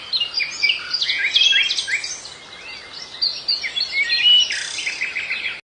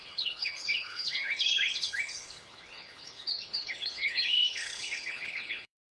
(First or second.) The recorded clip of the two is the first